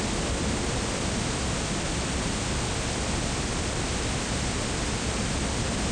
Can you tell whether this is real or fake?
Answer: real